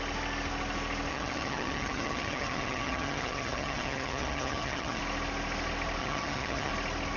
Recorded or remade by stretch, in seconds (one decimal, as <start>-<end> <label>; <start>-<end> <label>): 0.0-1.1 recorded; 1.1-5.0 remade; 5.0-6.0 recorded; 6.0-6.7 remade; 6.7-7.2 recorded